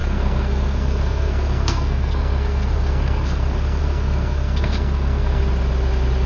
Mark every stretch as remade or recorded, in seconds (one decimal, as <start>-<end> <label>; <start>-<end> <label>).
0.0-5.4 remade; 5.4-6.3 recorded